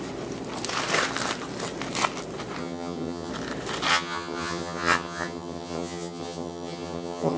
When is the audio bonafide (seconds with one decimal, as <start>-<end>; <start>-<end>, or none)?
0.0-2.6; 3.3-3.9